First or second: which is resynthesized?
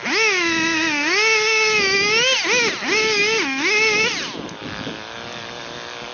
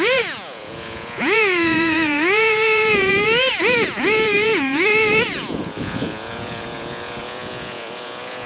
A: second